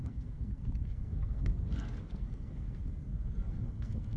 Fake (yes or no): yes